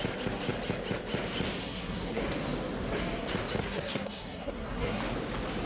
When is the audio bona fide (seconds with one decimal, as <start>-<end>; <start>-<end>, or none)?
0.0-1.6; 2.2-3.6; 5.0-5.7